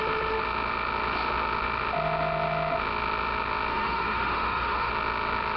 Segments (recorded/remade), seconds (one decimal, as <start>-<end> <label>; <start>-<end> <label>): 0.0-3.7 recorded; 3.7-4.9 remade; 4.9-5.6 recorded